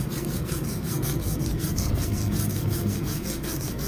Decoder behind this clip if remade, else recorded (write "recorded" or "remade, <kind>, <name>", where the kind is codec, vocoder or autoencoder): remade, codec, SNAC